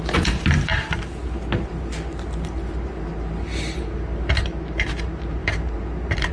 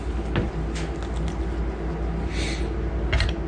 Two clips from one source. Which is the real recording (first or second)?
second